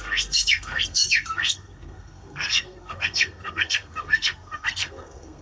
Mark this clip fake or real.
fake